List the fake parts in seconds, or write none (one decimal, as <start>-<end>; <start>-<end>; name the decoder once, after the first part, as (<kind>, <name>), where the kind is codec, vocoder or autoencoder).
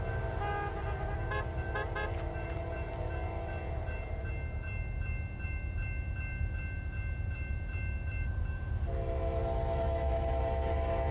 9.4-10.4 (autoencoder, DAC-VAE)